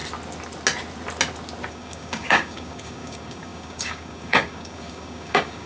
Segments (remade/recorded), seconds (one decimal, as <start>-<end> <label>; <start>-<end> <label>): 0.0-1.7 recorded; 1.7-5.7 remade